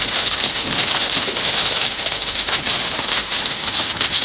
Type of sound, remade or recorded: remade